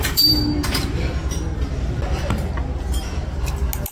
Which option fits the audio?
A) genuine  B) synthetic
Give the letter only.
A